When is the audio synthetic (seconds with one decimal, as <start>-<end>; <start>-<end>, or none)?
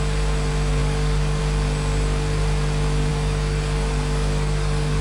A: 0.8-1.4; 3.1-5.0